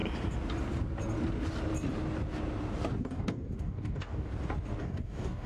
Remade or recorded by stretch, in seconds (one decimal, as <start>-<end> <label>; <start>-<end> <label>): 0.0-3.0 recorded; 3.0-4.3 remade; 4.3-4.8 recorded; 4.8-5.5 remade